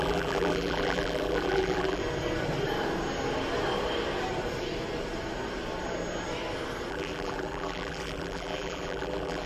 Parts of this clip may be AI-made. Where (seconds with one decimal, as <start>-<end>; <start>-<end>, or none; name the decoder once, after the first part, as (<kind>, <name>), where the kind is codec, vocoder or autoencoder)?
0.0-2.0 (vocoder, BigVGAN v2); 6.9-9.5